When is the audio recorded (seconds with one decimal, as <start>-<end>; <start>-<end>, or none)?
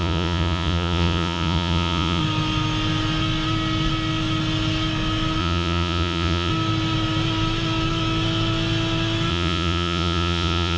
2.2-5.4; 6.5-9.3